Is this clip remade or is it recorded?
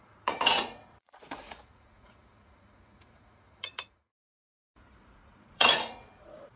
remade